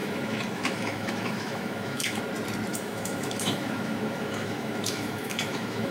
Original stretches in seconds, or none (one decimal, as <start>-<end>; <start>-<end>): 2.2-2.7